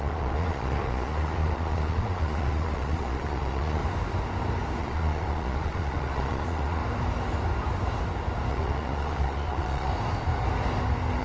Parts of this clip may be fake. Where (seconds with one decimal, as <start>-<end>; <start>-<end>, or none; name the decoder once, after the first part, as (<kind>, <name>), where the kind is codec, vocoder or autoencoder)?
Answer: 0.0-3.8 (vocoder, Vocos); 4.8-6.8; 8.5-9.9